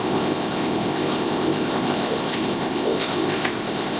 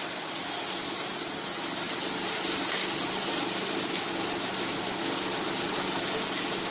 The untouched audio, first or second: second